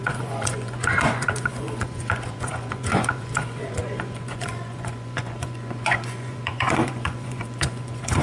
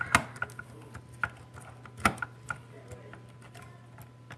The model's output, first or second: first